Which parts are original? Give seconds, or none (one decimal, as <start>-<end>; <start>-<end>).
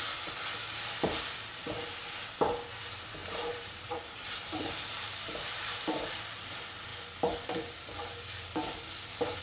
0.0-3.2; 6.2-9.4